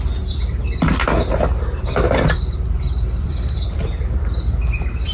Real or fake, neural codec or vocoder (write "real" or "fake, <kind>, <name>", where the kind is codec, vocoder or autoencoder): real